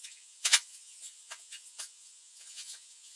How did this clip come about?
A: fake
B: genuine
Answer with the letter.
A